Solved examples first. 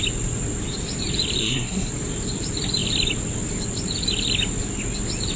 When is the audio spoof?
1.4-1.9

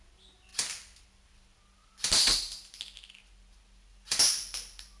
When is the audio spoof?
none

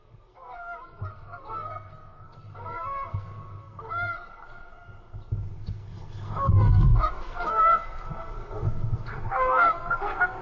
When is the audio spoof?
0.0-10.4

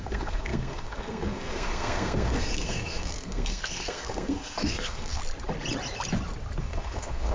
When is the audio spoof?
0.0-5.2; 6.6-7.3